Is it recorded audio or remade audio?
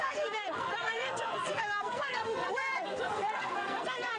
remade